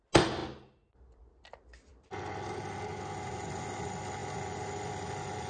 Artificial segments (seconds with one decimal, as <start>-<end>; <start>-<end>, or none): none